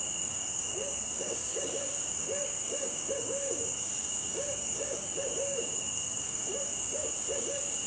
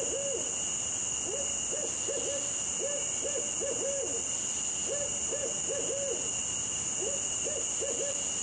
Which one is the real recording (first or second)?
second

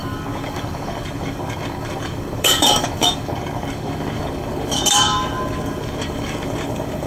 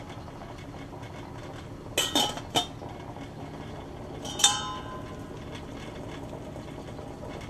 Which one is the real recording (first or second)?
second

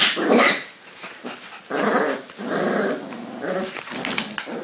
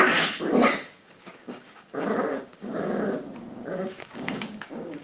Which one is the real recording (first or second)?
first